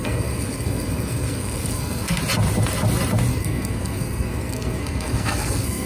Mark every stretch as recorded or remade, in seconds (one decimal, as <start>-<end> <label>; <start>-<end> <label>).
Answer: 0.0-2.2 remade; 2.2-3.3 recorded; 3.3-5.9 remade